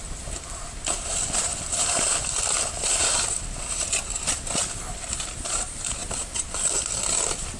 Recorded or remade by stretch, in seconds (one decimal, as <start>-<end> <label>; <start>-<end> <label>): 0.0-7.6 recorded